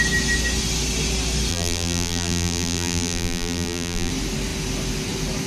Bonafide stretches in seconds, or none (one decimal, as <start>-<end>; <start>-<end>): 0.0-1.5; 4.1-5.5